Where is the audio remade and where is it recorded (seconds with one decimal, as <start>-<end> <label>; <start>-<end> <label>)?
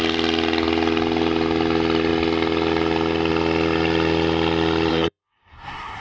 0.0-4.9 recorded; 4.9-6.0 remade